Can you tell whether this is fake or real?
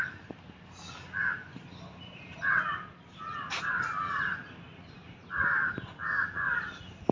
real